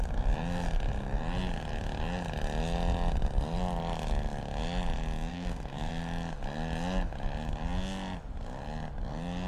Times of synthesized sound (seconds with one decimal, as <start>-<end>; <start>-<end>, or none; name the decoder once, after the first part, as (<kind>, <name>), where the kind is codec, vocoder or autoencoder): 5.3-5.9 (codec, SNAC)